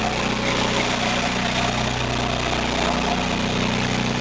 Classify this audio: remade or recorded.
recorded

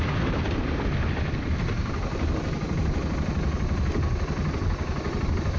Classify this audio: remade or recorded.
recorded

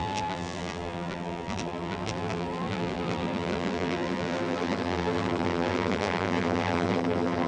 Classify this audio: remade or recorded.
remade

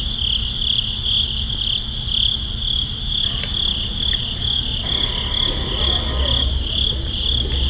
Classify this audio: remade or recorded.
recorded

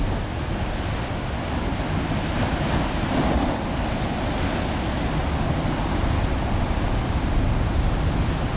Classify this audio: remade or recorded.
recorded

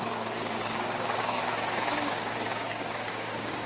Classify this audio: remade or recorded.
remade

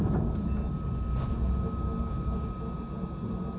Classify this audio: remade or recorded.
recorded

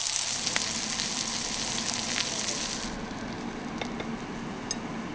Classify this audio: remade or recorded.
recorded